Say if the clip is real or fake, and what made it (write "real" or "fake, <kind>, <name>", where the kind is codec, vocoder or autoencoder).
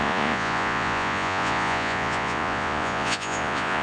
fake, vocoder, Vocos